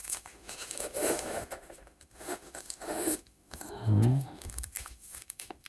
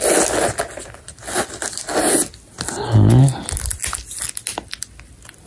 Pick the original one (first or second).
second